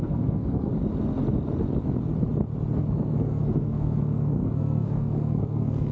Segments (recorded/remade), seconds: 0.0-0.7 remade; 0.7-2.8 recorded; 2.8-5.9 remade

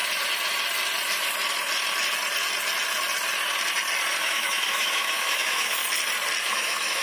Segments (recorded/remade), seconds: 0.0-4.2 recorded; 4.2-5.8 remade; 5.8-6.4 recorded; 6.4-7.0 remade

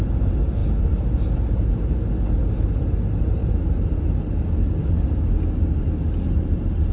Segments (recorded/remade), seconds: 0.0-0.6 remade; 0.6-3.2 recorded; 3.2-4.8 remade; 4.8-5.8 recorded; 5.8-6.9 remade